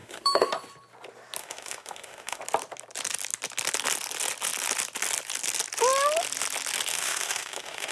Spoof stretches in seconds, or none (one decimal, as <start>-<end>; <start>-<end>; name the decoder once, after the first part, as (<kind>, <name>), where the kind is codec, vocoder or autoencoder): 0.0-0.5 (autoencoder, DAC-VAE); 1.4-2.4; 6.9-7.9

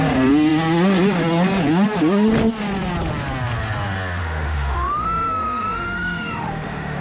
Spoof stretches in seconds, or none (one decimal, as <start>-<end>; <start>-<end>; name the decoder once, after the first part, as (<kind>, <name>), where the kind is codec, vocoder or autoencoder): 4.2-7.0 (autoencoder, DAC-VAE)

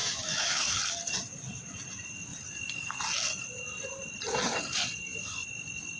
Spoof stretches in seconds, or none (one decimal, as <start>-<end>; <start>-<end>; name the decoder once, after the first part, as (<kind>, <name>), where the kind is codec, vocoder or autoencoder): 0.0-0.8 (autoencoder, DAC-VAE)